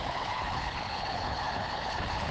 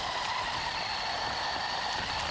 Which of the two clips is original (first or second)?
second